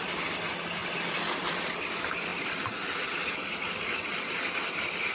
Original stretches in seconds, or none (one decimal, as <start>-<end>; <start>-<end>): 0.0-0.8; 1.7-5.1